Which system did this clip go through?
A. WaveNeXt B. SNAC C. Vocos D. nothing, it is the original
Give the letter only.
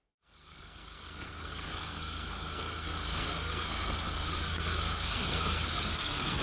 B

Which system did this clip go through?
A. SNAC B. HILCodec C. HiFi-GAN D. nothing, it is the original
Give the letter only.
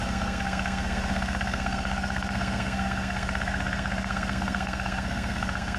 A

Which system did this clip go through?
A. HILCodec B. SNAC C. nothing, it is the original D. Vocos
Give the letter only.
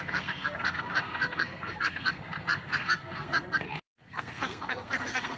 B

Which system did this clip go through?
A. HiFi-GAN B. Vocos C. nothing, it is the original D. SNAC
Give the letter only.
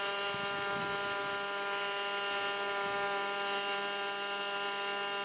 C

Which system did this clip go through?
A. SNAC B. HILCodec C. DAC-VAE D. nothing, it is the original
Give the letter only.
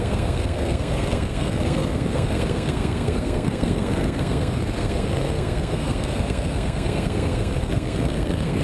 A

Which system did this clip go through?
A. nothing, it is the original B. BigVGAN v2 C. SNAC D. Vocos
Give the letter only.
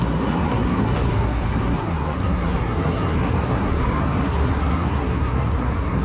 C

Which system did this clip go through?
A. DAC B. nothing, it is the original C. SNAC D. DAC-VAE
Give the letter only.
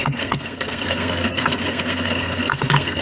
C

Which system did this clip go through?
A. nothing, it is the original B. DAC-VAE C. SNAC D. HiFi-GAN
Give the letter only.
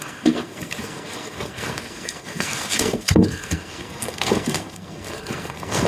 C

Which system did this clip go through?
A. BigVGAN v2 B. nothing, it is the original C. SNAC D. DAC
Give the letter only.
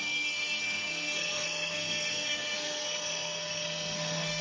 C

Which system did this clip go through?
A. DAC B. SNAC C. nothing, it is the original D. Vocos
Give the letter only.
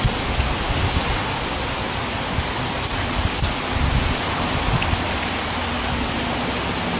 C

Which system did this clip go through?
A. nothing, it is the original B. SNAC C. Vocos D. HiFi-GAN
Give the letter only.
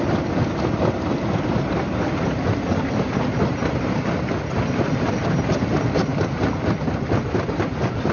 A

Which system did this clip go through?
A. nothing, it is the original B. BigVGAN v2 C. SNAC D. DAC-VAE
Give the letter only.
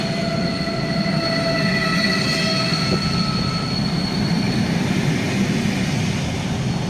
A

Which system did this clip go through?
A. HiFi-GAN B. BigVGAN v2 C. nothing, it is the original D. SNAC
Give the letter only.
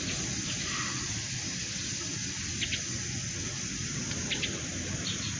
C